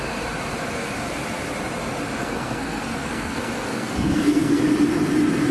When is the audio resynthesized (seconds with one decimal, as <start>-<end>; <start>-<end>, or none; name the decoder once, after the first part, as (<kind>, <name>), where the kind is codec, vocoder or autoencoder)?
2.2-4.6 (codec, SNAC)